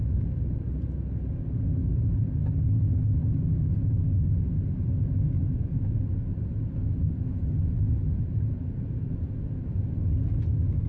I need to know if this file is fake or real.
real